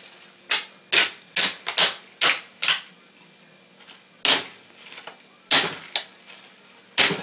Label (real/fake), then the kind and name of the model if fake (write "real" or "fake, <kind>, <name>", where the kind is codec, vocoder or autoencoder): real